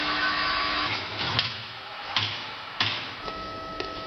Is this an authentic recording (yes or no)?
no